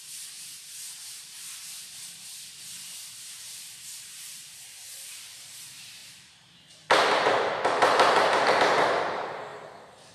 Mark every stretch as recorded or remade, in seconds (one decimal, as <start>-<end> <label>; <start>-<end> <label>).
0.0-9.5 remade; 9.5-10.1 recorded